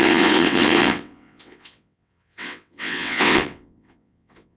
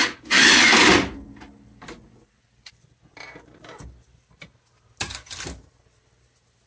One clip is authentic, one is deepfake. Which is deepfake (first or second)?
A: first